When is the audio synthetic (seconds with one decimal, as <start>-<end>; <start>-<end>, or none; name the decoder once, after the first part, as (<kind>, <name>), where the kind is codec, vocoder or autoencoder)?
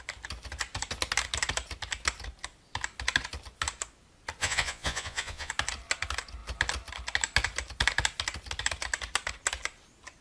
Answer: 4.4-5.5 (vocoder, Vocos)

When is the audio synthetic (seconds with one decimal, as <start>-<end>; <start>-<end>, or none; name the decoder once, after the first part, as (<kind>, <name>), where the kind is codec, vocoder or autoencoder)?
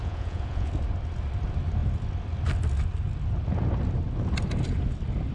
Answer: 0.0-0.7 (vocoder, Vocos)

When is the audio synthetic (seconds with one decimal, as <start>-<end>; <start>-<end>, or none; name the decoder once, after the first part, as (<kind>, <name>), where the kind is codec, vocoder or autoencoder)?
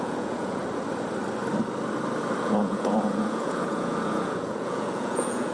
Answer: 0.0-0.6 (vocoder, Vocos); 2.4-5.5